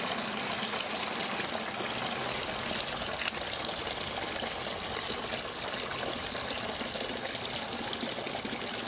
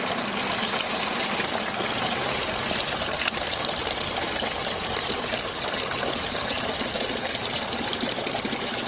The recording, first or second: first